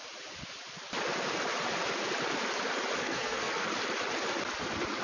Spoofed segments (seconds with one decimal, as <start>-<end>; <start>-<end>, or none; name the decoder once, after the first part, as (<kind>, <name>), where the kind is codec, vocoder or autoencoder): 3.0-3.7 (codec, SNAC)